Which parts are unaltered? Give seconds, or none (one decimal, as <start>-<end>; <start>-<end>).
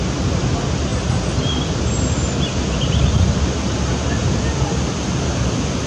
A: 0.0-5.9